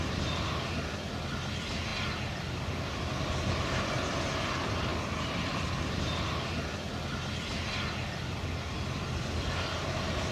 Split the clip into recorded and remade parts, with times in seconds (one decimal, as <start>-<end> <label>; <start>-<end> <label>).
0.0-10.3 recorded